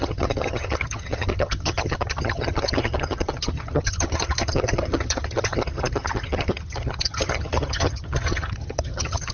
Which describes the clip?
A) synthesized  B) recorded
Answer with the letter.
A